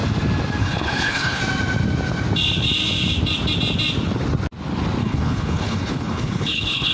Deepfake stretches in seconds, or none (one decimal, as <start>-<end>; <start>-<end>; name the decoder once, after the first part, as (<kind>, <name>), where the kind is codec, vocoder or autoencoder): 0.6-1.4 (codec, HILCodec); 5.0-6.9